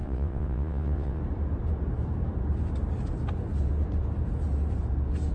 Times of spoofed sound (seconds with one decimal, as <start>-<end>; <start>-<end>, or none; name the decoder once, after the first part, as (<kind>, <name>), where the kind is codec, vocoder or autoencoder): 0.0-1.2 (vocoder, WaveNeXt)